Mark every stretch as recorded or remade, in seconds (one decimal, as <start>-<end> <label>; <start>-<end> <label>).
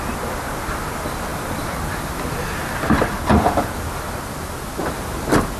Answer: 0.0-1.3 recorded; 1.3-4.3 remade; 4.3-5.6 recorded